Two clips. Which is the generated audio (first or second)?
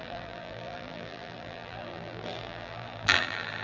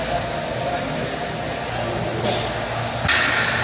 first